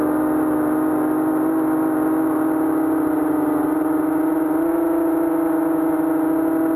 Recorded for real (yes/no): yes